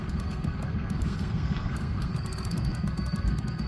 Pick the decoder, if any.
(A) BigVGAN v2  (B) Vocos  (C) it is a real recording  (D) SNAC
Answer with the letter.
D